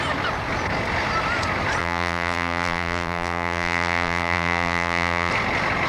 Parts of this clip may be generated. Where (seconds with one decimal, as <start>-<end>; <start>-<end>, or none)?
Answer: 1.8-5.3